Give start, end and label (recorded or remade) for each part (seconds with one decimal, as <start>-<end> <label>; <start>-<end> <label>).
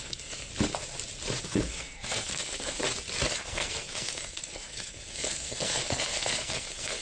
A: 0.0-0.5 remade; 0.5-1.4 recorded; 1.4-2.8 remade; 2.8-3.3 recorded; 3.3-7.0 remade